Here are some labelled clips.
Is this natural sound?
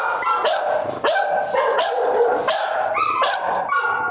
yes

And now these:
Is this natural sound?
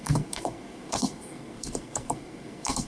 no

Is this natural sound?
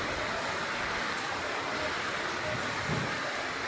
yes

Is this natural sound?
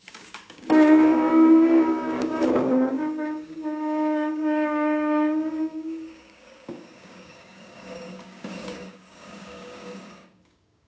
no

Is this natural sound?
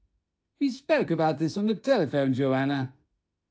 no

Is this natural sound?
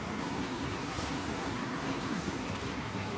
no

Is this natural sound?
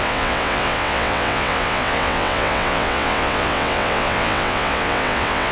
no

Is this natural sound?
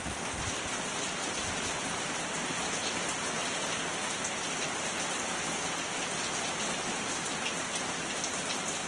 yes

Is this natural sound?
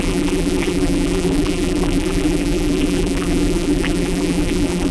no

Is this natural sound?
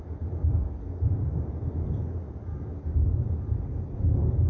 yes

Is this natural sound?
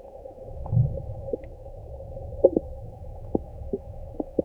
no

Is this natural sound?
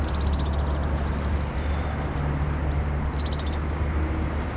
yes